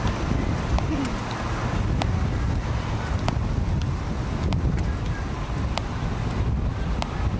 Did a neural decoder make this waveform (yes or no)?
no